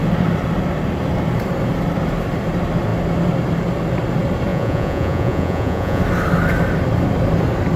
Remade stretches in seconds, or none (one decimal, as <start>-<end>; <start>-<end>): 4.5-6.0